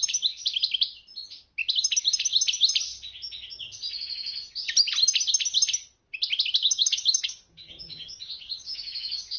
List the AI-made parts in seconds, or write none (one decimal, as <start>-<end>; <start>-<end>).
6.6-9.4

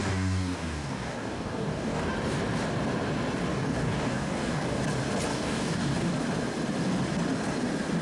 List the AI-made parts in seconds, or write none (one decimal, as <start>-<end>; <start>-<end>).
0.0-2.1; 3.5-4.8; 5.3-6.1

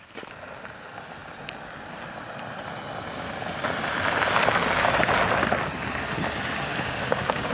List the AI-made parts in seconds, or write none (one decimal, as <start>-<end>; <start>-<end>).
6.7-7.5

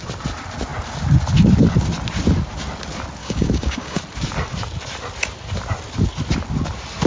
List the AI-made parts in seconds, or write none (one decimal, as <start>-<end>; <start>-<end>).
3.2-4.0

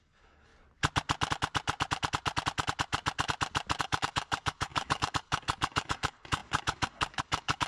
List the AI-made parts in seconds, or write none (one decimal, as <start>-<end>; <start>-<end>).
0.0-0.5; 3.8-7.7

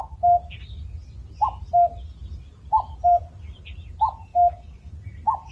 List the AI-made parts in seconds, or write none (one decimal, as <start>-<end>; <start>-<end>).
4.3-4.9

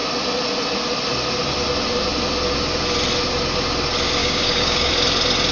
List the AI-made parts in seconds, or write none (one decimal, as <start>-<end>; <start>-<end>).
4.2-4.9